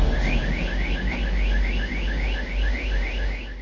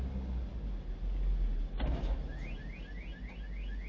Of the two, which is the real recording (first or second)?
second